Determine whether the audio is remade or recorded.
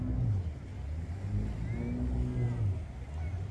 recorded